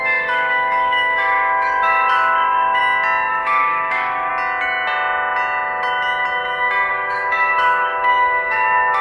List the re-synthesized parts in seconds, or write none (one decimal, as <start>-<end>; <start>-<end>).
0.0-2.8; 3.3-4.3; 6.9-9.0